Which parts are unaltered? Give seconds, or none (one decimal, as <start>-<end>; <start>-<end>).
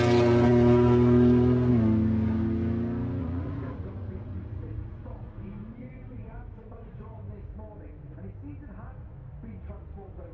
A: 0.0-3.2; 7.2-10.3